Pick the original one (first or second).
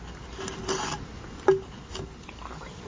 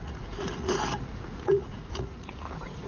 first